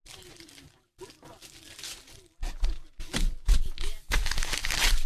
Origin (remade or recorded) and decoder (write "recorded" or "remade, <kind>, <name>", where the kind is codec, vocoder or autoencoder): recorded